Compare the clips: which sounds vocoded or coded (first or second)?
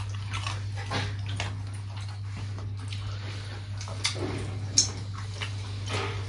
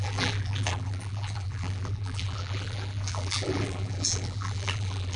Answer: second